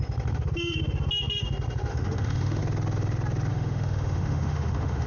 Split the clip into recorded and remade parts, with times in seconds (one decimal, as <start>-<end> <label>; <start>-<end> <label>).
0.0-1.9 recorded; 1.9-2.6 remade; 2.6-3.5 recorded; 3.5-5.1 remade